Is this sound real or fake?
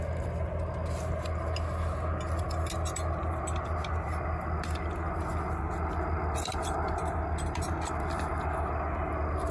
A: real